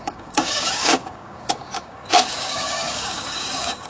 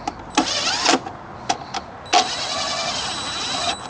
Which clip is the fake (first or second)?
first